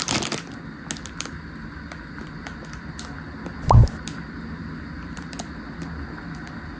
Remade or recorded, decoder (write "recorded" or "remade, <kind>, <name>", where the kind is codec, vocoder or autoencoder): recorded